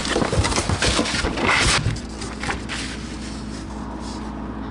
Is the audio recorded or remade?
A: recorded